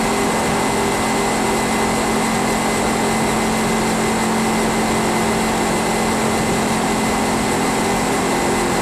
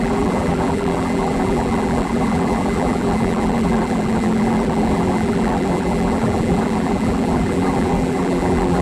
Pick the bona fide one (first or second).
first